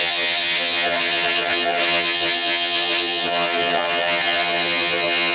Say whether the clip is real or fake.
fake